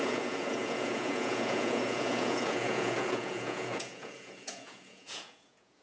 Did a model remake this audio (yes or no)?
yes